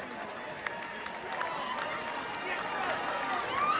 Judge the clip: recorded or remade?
recorded